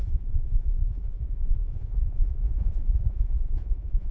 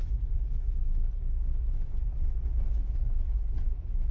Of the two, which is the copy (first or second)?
first